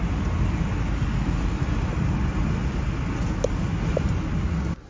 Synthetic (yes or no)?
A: no